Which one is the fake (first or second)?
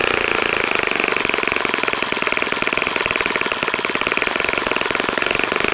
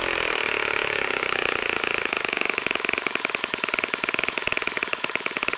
second